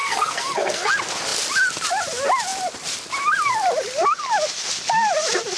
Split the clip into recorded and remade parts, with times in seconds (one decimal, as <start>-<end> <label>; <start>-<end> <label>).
0.0-0.9 remade; 0.9-5.6 recorded